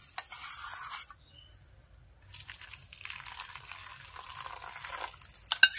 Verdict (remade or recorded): recorded